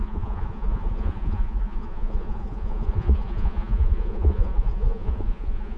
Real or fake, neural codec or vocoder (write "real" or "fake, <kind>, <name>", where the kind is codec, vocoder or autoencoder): fake, vocoder, Vocos